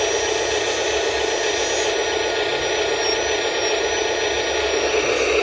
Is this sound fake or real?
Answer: real